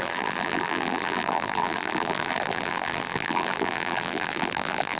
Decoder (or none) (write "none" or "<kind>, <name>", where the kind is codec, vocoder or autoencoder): vocoder, BigVGAN v2